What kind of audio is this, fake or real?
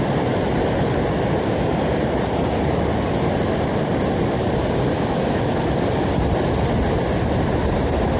real